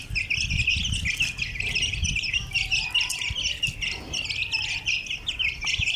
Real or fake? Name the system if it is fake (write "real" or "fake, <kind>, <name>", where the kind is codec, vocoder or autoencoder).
real